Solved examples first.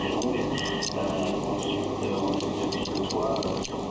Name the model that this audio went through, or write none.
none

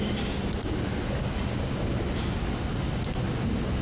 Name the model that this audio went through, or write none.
none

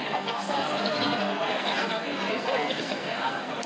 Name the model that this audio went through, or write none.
codec, SNAC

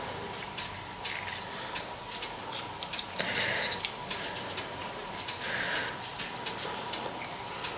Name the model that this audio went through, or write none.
none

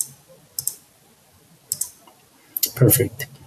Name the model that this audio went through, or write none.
none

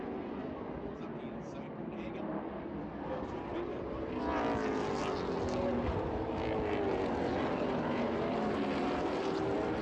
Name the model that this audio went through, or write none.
none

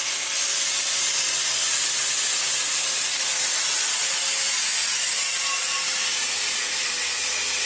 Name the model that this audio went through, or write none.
none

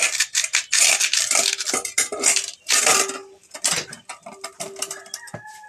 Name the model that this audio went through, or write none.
none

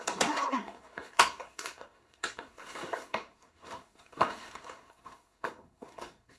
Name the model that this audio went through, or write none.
codec, SNAC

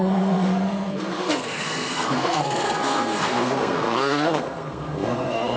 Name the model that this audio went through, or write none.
codec, SNAC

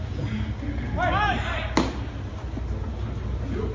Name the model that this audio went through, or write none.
none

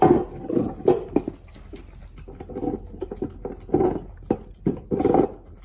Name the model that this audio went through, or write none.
none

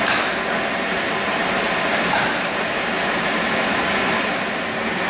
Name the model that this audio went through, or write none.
none